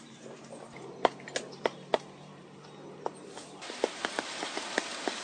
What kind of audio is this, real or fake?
real